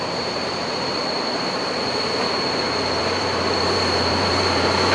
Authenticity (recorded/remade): remade